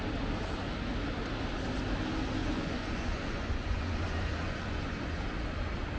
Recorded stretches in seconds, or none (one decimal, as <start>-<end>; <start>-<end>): 0.0-2.4; 5.2-6.0